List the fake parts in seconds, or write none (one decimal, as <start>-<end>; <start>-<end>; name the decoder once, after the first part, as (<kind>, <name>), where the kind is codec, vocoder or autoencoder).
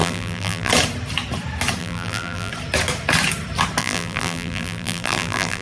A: 0.0-0.7 (vocoder, BigVGAN v2); 1.8-2.5; 3.8-5.6